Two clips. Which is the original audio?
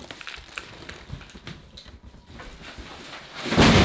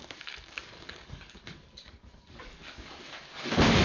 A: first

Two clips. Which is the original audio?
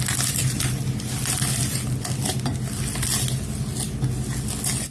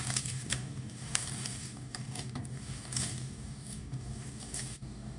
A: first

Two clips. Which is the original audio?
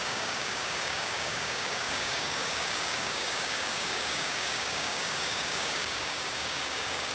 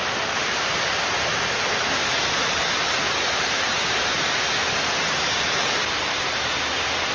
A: second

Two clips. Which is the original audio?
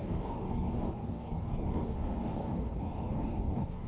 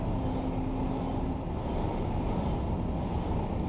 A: second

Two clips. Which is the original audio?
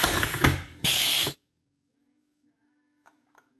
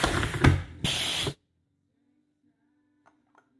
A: second